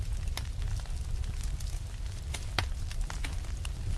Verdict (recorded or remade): recorded